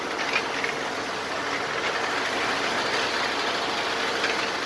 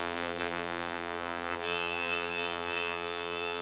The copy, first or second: second